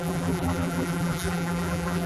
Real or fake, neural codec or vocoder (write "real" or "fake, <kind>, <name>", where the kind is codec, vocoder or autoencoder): fake, vocoder, BigVGAN v2